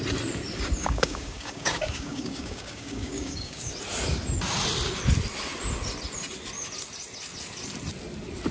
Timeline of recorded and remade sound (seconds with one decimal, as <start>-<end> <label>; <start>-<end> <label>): 0.0-0.8 recorded; 0.8-3.7 remade; 3.7-8.5 recorded

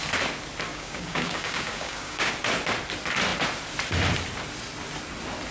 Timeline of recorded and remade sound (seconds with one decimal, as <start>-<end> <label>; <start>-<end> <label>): 0.0-0.7 recorded; 0.7-2.3 remade; 2.3-5.5 recorded

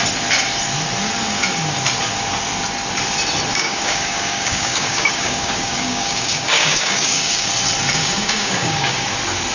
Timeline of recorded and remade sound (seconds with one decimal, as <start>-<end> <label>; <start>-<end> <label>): 0.0-3.5 recorded; 3.5-7.5 remade; 7.5-7.9 recorded; 7.9-9.1 remade; 9.1-9.5 recorded

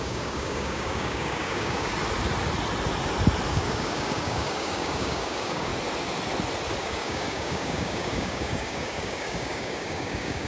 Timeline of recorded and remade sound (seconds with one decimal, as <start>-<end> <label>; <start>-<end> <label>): 0.0-1.9 remade; 1.9-3.5 recorded; 3.5-5.7 remade; 5.7-6.8 recorded; 6.8-10.5 remade

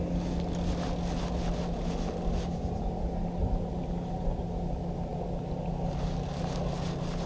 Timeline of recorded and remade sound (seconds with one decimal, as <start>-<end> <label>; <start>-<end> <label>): 0.0-7.3 recorded

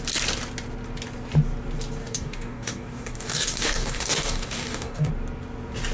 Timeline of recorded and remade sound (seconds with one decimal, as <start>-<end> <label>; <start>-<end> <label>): 0.0-2.0 recorded; 2.0-5.1 remade; 5.1-5.9 recorded

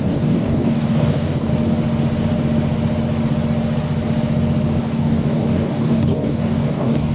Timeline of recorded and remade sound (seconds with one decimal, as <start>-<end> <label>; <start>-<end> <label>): 0.0-1.5 remade; 1.5-4.8 recorded; 4.8-7.1 remade

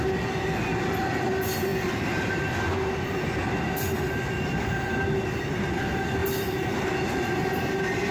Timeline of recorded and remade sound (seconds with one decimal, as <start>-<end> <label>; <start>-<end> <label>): 0.0-8.1 recorded